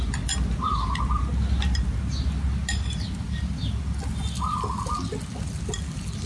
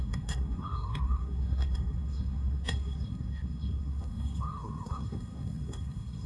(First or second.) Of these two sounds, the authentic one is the first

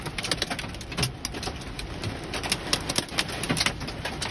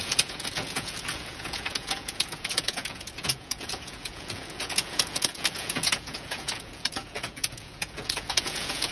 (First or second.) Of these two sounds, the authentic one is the first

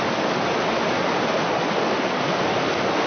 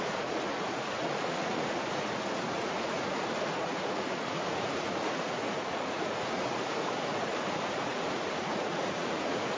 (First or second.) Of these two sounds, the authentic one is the first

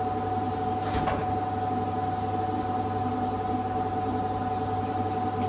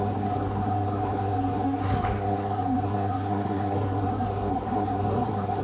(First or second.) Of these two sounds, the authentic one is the first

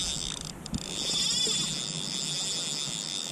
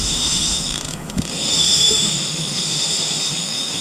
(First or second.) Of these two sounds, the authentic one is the first